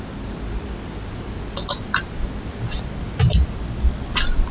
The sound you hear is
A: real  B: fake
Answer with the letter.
A